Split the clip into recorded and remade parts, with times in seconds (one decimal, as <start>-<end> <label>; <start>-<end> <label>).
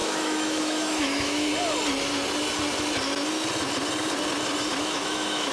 0.0-1.5 remade; 1.5-4.8 recorded; 4.8-5.5 remade